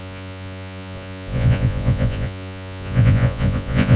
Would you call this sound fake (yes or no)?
yes